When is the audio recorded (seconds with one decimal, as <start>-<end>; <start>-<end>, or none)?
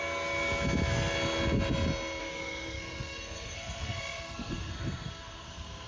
0.0-2.2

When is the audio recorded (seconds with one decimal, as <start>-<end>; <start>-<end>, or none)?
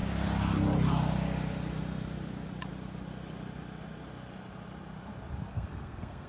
0.0-5.5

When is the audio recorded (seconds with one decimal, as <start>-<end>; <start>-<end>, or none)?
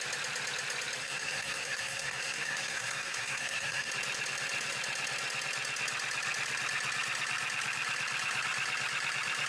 0.0-1.0; 3.9-9.5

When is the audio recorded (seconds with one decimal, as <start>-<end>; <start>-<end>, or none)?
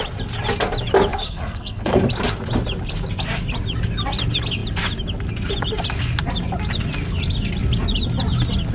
0.0-1.1; 2.0-8.7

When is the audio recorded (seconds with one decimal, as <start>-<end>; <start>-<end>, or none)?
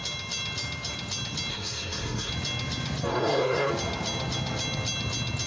0.0-1.5; 2.3-3.1; 3.7-5.5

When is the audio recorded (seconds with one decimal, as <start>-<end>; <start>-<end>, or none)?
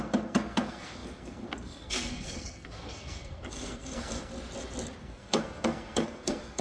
4.3-5.0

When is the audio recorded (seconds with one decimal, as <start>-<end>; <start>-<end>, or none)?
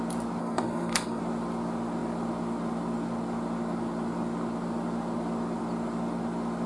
0.0-0.4; 1.2-6.7